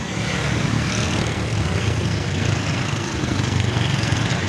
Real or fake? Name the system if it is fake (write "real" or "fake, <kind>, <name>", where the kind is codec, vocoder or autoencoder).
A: fake, codec, SNAC